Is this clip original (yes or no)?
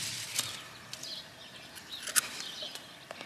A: yes